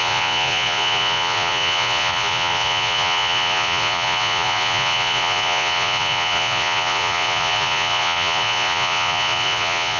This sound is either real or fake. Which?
fake